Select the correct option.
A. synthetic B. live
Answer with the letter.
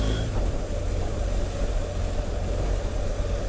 B